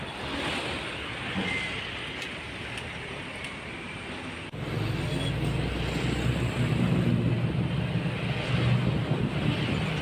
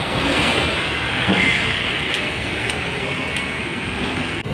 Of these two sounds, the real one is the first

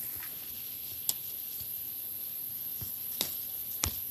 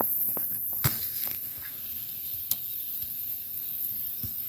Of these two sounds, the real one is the first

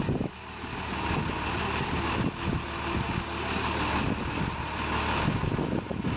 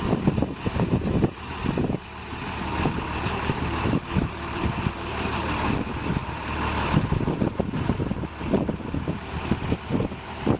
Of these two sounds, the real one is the first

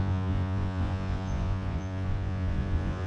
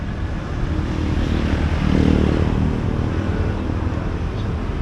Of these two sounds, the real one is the second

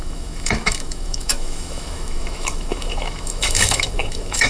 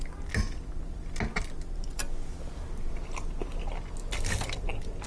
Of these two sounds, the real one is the second